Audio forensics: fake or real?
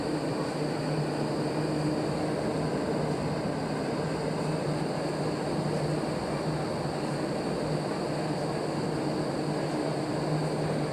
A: real